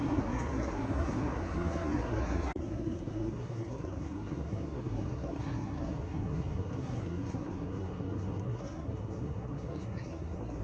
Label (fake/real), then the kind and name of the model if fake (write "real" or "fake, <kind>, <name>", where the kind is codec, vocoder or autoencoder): fake, codec, SNAC